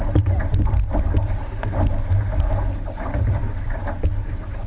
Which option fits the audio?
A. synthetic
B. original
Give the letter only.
B